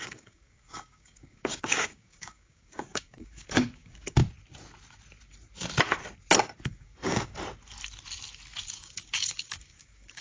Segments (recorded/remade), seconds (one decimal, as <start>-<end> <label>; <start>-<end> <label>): 0.0-4.2 remade; 4.2-6.6 recorded; 6.6-7.3 remade; 7.3-8.7 recorded; 8.7-10.2 remade